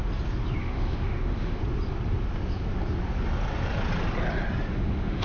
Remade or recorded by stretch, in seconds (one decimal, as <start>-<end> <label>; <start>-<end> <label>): 0.0-0.6 recorded; 0.6-1.6 remade; 1.6-4.7 recorded; 4.7-5.2 remade